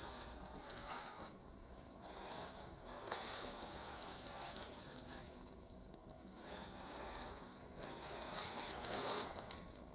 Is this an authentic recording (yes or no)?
no